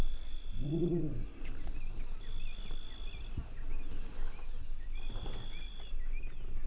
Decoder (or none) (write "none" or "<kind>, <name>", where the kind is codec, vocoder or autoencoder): none